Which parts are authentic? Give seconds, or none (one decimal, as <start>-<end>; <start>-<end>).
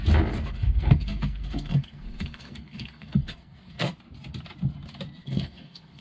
0.0-0.4; 4.0-5.2